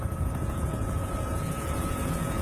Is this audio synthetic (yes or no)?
yes